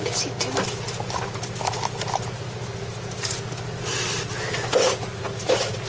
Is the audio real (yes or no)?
yes